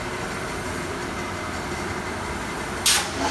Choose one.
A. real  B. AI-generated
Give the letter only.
A